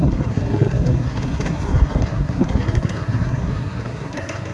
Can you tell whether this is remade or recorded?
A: remade